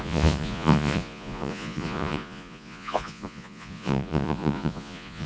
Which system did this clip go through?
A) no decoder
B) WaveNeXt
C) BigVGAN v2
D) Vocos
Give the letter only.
D